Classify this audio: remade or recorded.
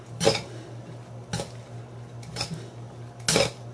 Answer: recorded